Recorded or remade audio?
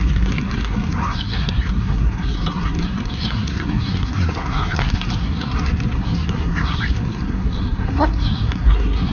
remade